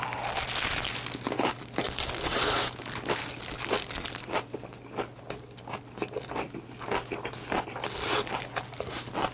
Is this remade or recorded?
recorded